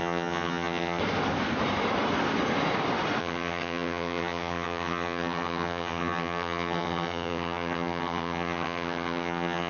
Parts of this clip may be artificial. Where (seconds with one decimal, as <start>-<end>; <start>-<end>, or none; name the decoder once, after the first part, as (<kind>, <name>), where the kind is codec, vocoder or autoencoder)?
0.0-1.0 (vocoder, HiFi-GAN); 3.2-9.7